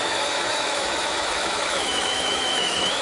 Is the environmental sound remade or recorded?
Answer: remade